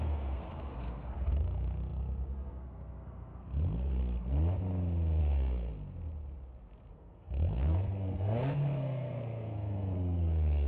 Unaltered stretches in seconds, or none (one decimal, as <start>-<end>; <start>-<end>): 4.0-5.2; 5.7-6.9